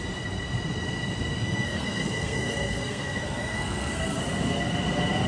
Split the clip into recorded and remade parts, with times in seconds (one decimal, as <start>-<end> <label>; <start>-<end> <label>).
0.0-1.4 recorded; 1.4-4.2 remade; 4.2-5.3 recorded